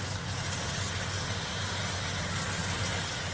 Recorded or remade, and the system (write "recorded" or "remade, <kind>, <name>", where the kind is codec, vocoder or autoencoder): recorded